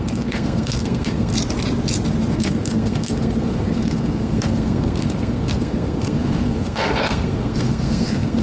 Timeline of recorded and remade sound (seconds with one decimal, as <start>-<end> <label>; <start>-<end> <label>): 0.0-1.3 remade; 1.3-2.3 recorded; 2.3-8.4 remade